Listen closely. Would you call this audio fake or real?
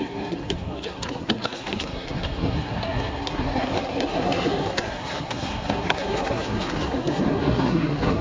fake